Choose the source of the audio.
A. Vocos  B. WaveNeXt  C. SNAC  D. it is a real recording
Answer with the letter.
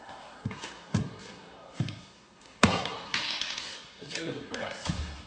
C